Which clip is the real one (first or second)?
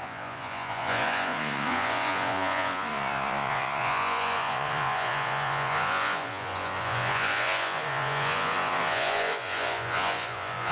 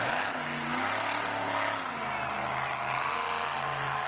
second